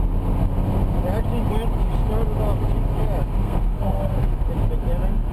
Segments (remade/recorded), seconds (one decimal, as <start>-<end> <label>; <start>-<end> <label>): 0.0-3.4 recorded; 3.4-4.3 remade; 4.3-5.3 recorded